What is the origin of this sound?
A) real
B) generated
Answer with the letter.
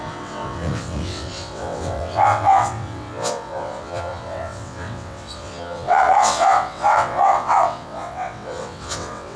B